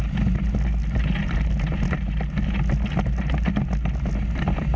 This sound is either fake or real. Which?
real